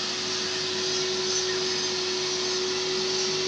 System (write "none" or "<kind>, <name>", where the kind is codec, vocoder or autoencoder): none